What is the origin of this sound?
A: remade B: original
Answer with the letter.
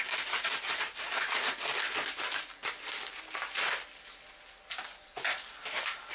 B